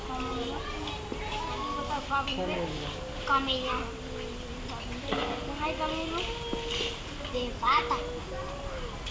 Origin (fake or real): real